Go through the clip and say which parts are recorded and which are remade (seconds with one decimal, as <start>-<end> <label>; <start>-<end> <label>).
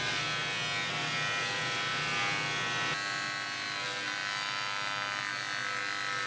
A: 0.0-6.3 recorded